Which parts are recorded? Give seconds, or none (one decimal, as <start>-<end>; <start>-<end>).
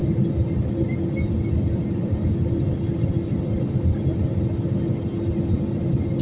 0.0-6.2